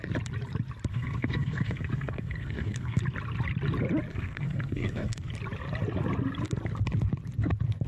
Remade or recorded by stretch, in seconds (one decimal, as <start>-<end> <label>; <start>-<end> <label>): 0.0-0.9 recorded; 0.9-3.0 remade; 3.0-4.1 recorded; 4.1-5.3 remade; 5.3-7.9 recorded